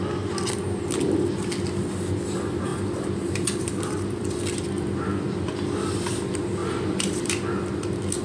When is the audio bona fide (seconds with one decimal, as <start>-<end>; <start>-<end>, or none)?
0.0-2.7; 4.4-6.6; 7.3-8.2